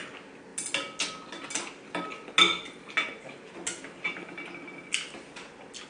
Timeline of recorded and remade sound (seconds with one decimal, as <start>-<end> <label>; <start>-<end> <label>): 0.0-5.9 recorded